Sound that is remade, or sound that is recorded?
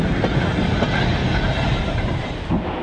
recorded